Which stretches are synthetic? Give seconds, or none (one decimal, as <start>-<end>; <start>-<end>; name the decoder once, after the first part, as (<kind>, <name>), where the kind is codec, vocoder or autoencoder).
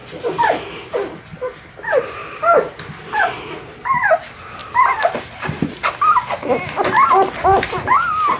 none